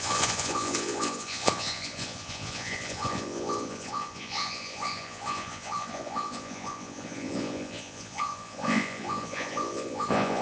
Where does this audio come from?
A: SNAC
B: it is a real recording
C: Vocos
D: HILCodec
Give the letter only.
C